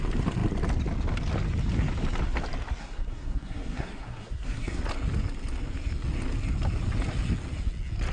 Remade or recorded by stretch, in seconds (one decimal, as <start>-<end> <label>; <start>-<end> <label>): 0.0-2.8 recorded; 2.8-4.8 remade; 4.8-8.1 recorded